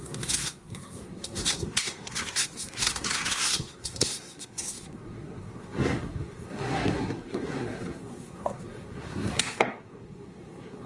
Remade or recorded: remade